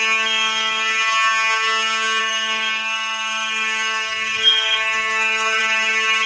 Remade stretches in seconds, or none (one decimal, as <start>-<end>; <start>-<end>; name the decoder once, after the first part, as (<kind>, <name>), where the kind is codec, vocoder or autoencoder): 2.2-5.6 (codec, SNAC)